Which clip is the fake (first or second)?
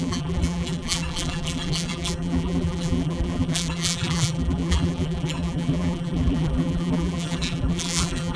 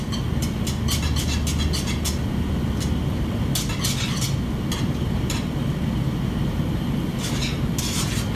first